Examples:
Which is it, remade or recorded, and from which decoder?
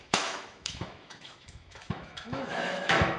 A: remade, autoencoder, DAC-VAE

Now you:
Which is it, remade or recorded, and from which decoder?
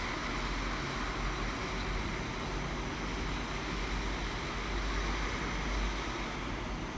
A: recorded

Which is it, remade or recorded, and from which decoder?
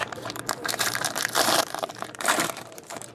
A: remade, vocoder, BigVGAN v2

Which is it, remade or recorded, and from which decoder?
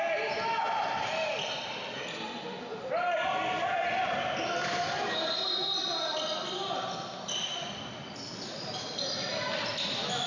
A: recorded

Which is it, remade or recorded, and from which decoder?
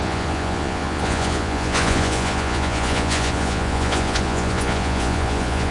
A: remade, vocoder, Vocos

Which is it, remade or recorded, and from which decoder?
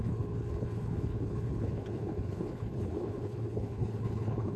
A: remade, codec, HILCodec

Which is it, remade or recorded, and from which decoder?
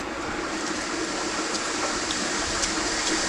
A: recorded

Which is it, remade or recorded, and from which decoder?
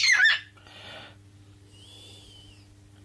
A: recorded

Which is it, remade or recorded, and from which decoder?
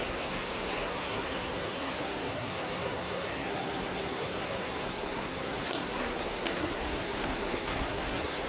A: remade, codec, SNAC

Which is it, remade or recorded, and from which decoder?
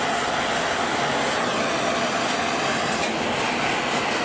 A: recorded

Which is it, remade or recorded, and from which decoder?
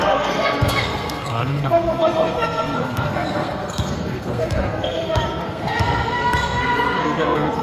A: remade, codec, SNAC